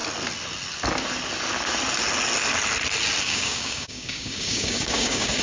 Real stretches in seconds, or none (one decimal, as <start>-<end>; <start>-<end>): 0.0-3.2